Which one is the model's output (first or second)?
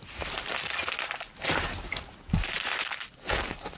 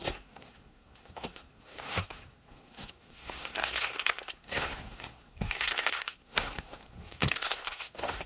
second